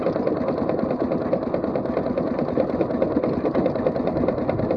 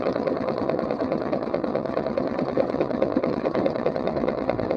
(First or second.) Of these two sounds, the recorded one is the first